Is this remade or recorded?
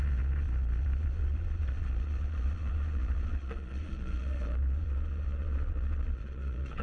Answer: remade